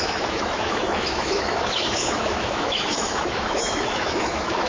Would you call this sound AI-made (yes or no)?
yes